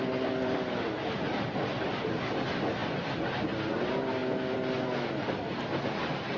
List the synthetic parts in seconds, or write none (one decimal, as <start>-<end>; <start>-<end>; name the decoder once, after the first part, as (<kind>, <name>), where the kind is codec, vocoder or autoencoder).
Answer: none